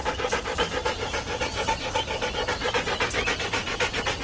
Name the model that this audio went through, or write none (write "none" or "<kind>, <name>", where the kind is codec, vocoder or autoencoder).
none